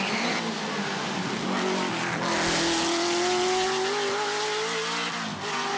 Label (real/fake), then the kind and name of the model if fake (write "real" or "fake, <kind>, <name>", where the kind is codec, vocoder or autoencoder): real